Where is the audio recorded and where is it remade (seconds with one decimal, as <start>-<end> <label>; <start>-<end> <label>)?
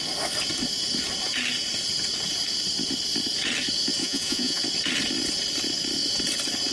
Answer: 0.0-4.0 recorded; 4.0-4.6 remade; 4.6-6.7 recorded